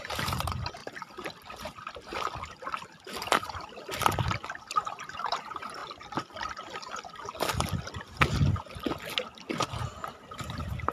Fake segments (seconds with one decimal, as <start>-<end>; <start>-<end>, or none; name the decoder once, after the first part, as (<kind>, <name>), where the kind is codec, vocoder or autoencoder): 0.0-0.8 (vocoder, BigVGAN v2); 1.5-2.1; 4.7-5.8; 9.7-10.9